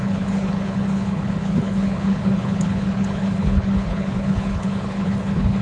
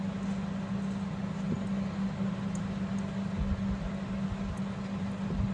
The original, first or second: second